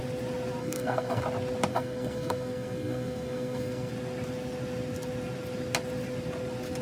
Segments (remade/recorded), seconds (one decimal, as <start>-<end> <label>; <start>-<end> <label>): 0.0-0.6 recorded; 0.6-1.2 remade; 1.2-1.7 recorded; 1.7-3.9 remade; 3.9-6.8 recorded